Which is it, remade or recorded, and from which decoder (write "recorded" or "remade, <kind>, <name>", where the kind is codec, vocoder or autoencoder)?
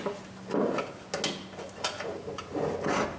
recorded